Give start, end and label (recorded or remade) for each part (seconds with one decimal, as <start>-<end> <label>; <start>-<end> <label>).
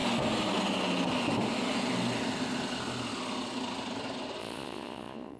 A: 0.0-4.4 recorded; 4.4-5.4 remade